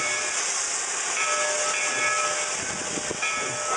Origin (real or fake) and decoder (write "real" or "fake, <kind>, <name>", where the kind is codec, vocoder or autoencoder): real